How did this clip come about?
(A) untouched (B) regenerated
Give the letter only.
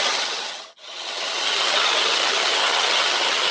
B